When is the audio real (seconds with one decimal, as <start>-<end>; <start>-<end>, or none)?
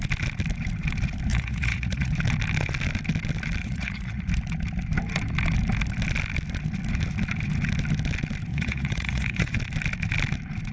0.0-1.3; 2.1-3.6; 4.2-8.5; 9.5-10.7